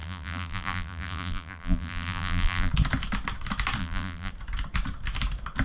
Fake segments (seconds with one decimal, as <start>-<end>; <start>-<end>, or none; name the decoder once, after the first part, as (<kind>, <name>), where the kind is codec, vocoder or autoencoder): 0.0-2.7 (vocoder, BigVGAN v2); 3.8-4.3